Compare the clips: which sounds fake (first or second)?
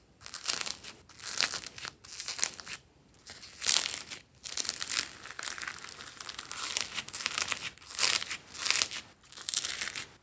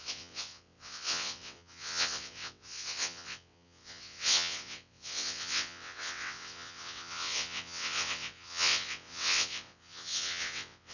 second